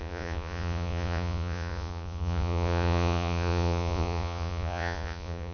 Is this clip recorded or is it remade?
remade